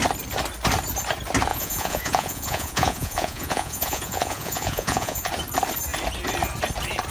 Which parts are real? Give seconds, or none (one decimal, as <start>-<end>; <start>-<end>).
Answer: 0.0-1.5; 5.3-7.1

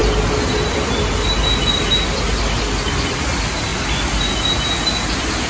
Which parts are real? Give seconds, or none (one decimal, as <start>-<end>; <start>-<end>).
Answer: 0.0-5.5

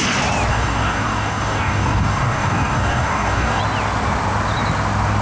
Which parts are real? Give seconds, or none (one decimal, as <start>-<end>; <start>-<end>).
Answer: 0.0-0.5; 3.6-5.2

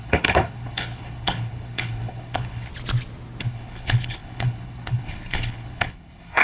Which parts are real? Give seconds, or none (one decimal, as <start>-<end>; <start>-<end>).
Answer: 2.7-3.4